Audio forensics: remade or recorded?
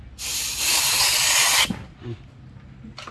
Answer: recorded